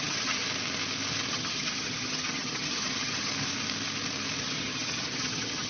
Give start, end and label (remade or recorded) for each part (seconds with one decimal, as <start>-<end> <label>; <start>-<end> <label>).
0.0-0.4 remade; 0.4-1.3 recorded; 1.3-3.3 remade; 3.3-4.4 recorded; 4.4-5.7 remade